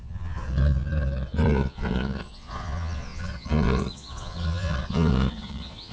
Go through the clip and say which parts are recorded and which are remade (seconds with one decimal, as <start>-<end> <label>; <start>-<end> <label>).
0.0-5.9 remade